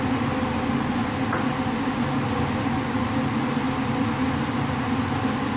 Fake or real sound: real